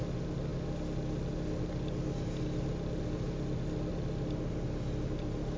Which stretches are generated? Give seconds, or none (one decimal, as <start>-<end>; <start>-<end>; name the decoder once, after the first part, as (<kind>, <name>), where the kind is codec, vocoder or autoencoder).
none